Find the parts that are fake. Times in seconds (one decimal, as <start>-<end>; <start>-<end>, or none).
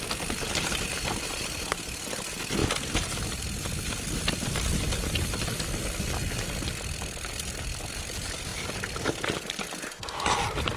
none